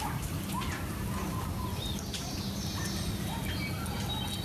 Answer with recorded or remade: recorded